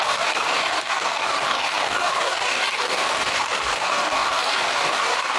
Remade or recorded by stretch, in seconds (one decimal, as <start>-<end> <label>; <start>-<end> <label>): 0.0-5.4 remade

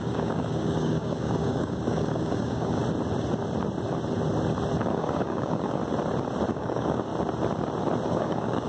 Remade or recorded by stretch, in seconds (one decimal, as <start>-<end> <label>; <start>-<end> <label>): 0.0-2.8 remade; 2.8-4.8 recorded; 4.8-5.8 remade; 5.8-6.5 recorded; 6.5-7.1 remade; 7.1-8.1 recorded; 8.1-8.7 remade